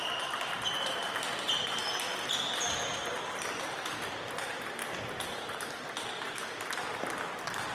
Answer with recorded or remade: recorded